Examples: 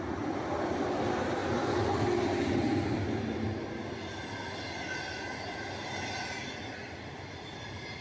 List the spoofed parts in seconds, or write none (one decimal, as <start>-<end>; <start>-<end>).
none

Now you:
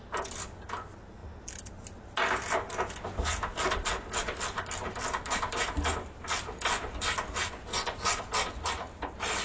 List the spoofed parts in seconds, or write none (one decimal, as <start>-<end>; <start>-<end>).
7.7-8.2

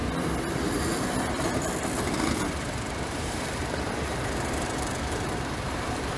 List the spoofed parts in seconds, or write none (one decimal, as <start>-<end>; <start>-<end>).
2.7-6.2

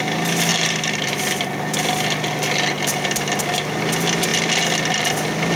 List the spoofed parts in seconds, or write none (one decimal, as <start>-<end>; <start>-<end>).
0.5-1.2

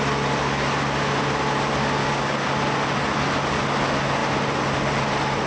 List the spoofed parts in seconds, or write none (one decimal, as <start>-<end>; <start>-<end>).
2.0-2.5

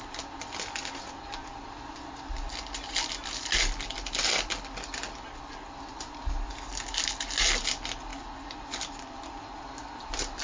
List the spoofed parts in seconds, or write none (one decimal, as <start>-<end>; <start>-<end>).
none